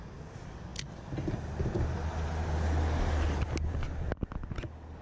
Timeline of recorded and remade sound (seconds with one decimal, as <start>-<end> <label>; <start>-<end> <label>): 0.0-5.0 recorded